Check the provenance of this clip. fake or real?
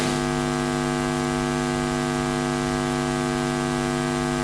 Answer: real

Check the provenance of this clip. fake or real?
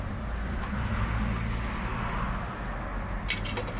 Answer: real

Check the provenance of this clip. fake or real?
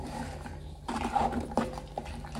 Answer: real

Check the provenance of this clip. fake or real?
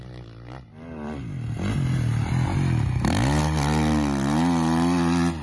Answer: real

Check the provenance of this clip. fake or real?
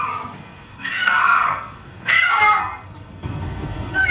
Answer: fake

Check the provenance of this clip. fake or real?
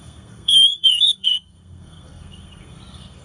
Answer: fake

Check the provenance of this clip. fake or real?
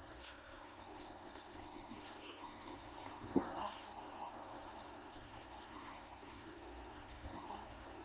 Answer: fake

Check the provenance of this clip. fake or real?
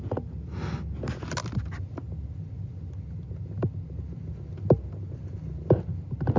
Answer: real